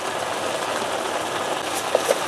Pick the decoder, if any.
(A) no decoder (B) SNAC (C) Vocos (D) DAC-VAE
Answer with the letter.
A